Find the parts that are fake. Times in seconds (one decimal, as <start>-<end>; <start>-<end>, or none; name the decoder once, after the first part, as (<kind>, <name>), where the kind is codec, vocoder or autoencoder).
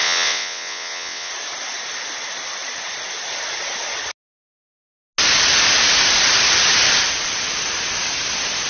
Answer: 0.0-1.3 (vocoder, WaveNeXt)